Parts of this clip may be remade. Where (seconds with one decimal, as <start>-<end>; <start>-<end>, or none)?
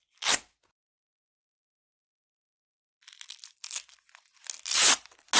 none